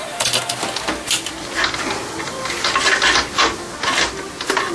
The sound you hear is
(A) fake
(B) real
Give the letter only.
B